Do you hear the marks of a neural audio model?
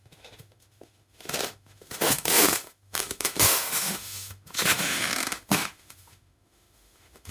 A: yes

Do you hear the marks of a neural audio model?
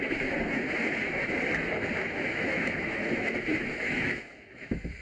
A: yes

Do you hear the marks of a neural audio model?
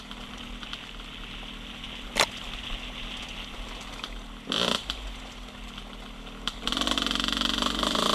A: no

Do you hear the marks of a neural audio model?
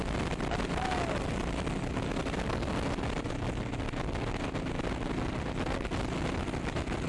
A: no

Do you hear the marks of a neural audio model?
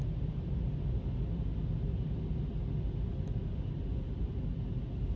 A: no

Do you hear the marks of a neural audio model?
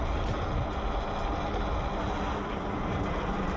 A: no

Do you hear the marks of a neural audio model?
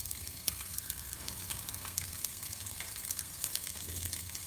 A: yes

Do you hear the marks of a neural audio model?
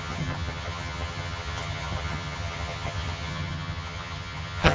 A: yes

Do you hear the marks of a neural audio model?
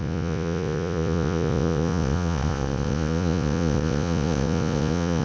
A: yes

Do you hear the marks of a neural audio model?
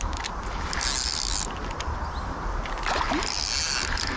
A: no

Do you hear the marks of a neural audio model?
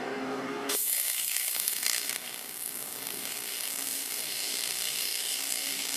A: yes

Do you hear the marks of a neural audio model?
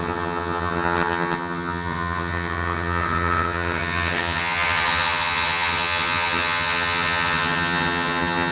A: yes